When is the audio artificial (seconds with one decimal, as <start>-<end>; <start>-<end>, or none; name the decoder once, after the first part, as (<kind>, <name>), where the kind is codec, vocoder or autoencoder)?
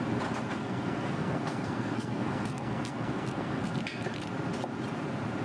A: 0.5-3.7 (codec, SNAC)